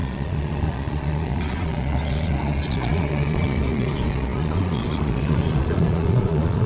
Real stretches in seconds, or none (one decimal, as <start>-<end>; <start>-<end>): none